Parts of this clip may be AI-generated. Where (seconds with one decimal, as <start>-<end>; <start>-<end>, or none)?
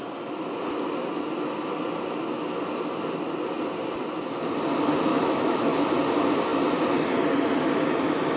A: 5.1-5.9